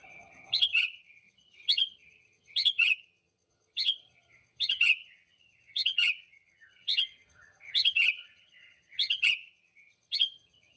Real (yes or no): no